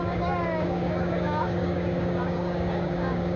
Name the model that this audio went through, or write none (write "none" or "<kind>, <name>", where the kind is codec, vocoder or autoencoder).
codec, DAC